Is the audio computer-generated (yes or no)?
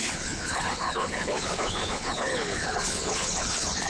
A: yes